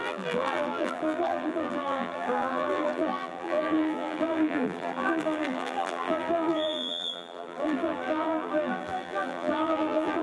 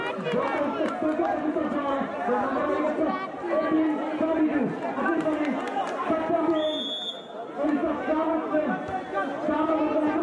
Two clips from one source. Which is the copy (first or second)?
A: first